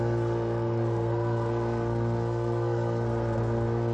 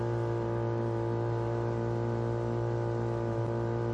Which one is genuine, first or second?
second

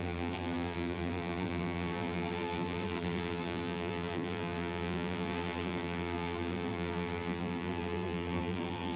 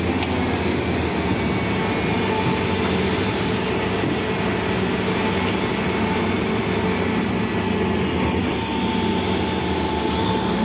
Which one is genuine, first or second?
second